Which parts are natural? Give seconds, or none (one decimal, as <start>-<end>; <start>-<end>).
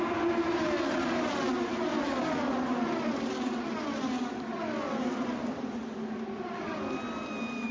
0.0-7.7